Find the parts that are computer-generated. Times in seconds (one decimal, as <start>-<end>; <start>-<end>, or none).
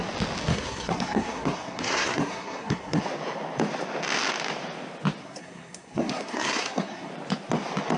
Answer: 0.5-3.0; 5.2-7.1